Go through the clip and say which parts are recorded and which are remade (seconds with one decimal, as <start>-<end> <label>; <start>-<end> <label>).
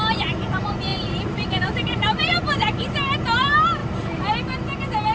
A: 0.0-0.9 recorded; 0.9-3.0 remade; 3.0-3.8 recorded; 3.8-4.6 remade; 4.6-5.1 recorded